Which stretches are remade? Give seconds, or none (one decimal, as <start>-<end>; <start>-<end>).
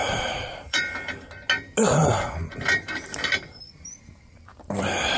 0.0-0.8